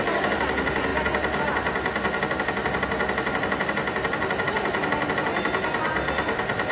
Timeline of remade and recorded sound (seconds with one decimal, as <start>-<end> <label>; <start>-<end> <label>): 0.0-6.7 recorded